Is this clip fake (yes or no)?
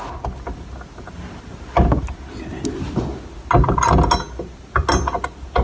no